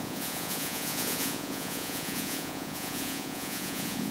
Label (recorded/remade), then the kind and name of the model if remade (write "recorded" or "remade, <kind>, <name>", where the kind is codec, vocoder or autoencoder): remade, vocoder, Vocos